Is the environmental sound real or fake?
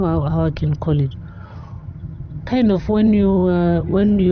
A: fake